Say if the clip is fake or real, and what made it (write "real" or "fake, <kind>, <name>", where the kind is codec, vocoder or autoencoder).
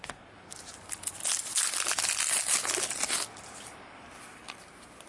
real